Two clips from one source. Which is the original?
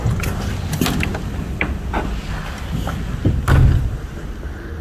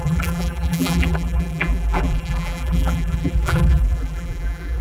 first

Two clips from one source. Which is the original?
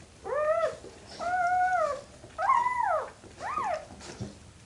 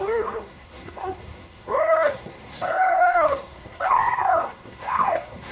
first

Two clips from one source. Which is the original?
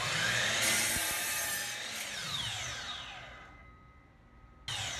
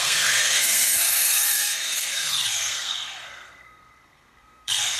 first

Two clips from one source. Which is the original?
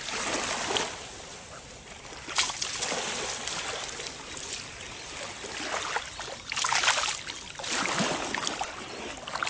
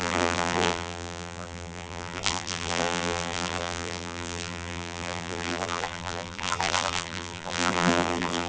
first